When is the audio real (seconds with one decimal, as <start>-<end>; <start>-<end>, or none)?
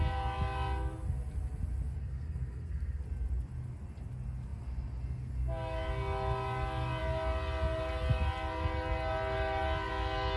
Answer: 0.0-2.0; 3.0-10.4